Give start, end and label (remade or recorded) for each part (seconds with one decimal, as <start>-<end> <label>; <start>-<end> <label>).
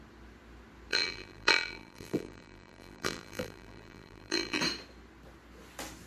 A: 0.0-0.9 recorded; 0.9-4.6 remade; 4.6-6.1 recorded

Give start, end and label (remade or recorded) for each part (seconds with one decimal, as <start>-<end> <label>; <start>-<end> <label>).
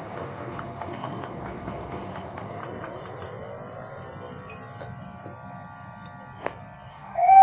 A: 0.0-2.6 remade; 2.6-6.9 recorded; 6.9-7.4 remade